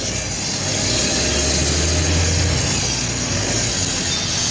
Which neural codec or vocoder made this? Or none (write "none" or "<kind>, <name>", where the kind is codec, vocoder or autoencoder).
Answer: none